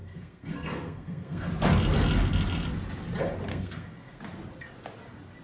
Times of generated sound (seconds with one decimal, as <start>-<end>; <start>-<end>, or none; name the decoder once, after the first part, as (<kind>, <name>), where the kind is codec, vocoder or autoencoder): 0.0-1.5 (codec, SNAC); 3.5-4.2

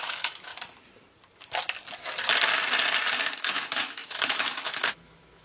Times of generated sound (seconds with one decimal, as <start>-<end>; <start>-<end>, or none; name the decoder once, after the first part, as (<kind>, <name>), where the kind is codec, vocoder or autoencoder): 0.0-0.5 (autoencoder, DAC-VAE); 3.4-5.4

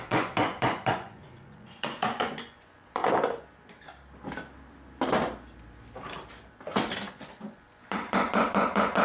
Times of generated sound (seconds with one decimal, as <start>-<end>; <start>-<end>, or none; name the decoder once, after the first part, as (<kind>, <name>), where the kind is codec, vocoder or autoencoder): 0.0-3.0 (vocoder, Vocos); 7.1-9.0